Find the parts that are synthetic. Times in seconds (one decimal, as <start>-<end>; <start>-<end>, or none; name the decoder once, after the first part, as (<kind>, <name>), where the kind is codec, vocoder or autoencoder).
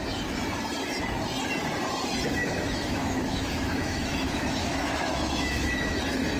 2.4-6.0 (autoencoder, DAC-VAE)